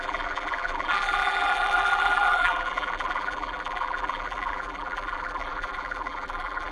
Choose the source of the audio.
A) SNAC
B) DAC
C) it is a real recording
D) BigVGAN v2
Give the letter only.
D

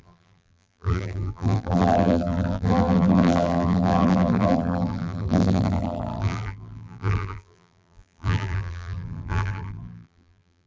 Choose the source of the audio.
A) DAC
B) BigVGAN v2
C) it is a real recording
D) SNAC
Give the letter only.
B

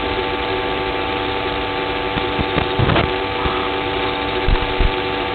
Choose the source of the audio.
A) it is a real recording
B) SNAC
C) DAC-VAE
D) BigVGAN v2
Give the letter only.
A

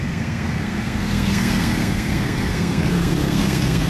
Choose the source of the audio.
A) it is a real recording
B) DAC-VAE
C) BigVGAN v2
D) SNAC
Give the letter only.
D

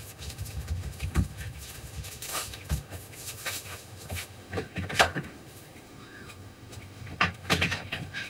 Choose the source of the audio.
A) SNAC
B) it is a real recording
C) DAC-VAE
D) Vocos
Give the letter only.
C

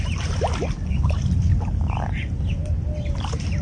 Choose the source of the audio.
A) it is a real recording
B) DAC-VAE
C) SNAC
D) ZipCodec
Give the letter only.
A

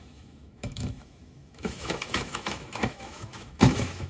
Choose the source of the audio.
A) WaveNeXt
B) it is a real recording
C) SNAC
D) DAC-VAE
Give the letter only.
D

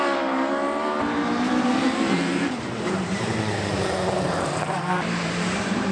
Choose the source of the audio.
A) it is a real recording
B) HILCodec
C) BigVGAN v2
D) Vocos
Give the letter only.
C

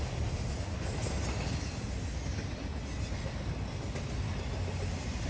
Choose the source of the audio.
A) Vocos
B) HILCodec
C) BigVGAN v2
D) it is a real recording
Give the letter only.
D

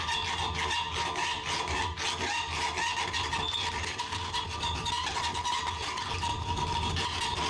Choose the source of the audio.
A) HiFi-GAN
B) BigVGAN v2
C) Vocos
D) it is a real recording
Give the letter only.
D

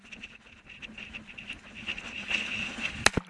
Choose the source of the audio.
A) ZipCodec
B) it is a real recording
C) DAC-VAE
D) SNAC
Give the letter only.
B